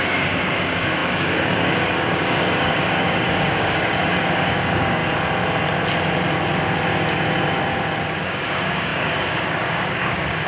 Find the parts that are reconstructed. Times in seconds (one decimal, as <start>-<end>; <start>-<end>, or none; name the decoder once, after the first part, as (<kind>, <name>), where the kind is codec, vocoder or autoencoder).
0.0-5.0 (codec, DAC); 8.2-10.5